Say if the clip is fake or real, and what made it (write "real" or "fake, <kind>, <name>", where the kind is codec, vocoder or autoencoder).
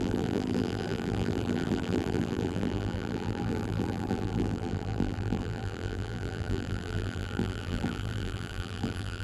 fake, vocoder, BigVGAN v2